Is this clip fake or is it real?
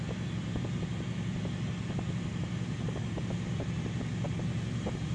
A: real